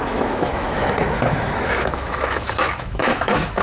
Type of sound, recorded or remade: remade